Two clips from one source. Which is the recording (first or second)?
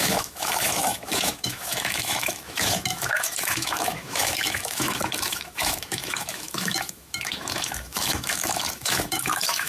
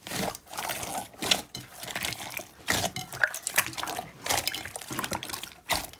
second